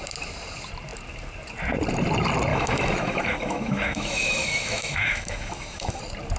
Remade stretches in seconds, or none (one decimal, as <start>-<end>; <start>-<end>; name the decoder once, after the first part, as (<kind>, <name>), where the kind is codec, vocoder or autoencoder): 2.5-6.0 (autoencoder, DAC-VAE)